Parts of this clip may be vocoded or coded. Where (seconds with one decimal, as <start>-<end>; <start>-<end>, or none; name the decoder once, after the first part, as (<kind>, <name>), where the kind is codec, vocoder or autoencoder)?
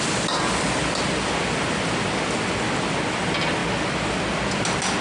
none